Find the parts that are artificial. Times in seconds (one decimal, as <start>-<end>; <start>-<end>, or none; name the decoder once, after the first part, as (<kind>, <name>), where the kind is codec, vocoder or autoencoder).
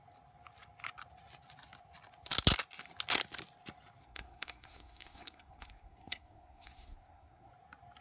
4.0-7.5 (codec, SNAC)